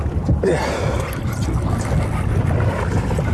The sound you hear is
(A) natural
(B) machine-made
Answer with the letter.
A